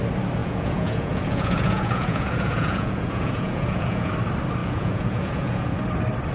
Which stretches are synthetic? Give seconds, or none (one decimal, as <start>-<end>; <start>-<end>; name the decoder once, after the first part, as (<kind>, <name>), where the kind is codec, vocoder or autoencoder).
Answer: 0.4-4.1 (vocoder, Vocos); 4.6-5.7